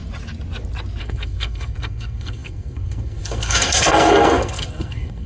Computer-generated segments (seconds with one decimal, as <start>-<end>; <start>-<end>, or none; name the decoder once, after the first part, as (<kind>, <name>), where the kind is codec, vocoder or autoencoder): 1.0-5.3 (codec, SNAC)